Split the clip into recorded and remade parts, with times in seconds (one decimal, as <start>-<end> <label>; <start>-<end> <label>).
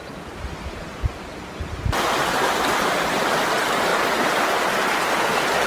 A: 0.0-5.7 recorded